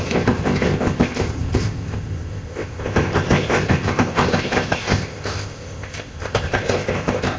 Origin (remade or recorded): remade